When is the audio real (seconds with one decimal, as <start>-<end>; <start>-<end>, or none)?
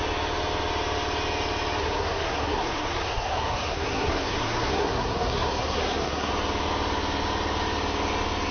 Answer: 0.0-1.8; 6.3-8.5